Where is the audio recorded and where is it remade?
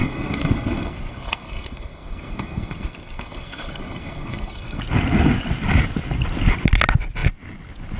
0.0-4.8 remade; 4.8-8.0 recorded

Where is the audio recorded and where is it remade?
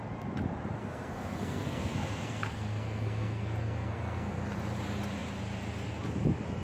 0.0-0.8 recorded; 0.8-4.4 remade; 4.4-6.6 recorded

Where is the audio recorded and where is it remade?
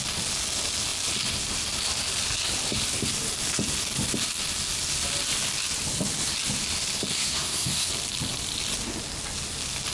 0.0-7.1 recorded; 7.1-7.9 remade; 7.9-9.9 recorded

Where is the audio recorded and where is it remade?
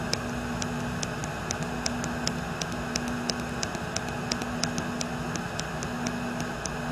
0.0-6.9 recorded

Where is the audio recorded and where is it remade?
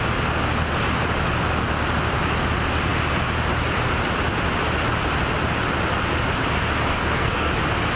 0.0-6.9 recorded; 6.9-7.5 remade; 7.5-8.0 recorded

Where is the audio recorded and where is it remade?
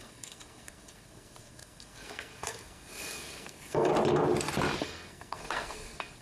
0.0-3.9 remade; 3.9-4.8 recorded; 4.8-6.2 remade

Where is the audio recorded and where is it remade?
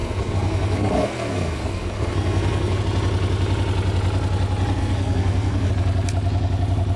0.0-2.8 remade; 2.8-4.8 recorded; 4.8-5.7 remade; 5.7-7.0 recorded